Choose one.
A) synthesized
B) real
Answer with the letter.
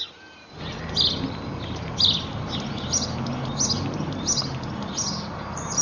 B